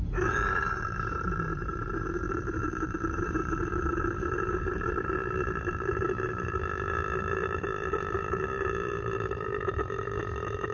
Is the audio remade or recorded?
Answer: remade